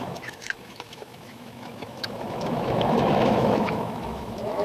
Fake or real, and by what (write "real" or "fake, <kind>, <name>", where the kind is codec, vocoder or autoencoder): fake, autoencoder, DAC-VAE